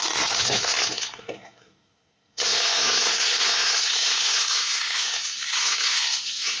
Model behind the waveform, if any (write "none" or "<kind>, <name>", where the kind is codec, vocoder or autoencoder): codec, SNAC